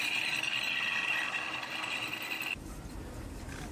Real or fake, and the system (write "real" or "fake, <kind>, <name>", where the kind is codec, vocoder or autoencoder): fake, vocoder, BigVGAN v2